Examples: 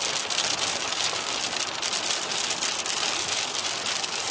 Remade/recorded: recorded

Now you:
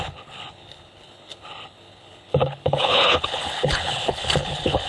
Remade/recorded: remade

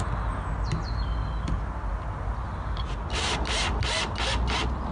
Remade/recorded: recorded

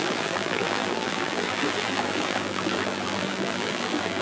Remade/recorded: remade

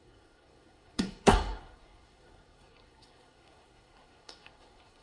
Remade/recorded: remade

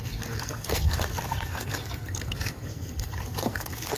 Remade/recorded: remade